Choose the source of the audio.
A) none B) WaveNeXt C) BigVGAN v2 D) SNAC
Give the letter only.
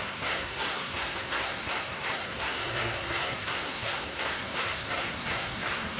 D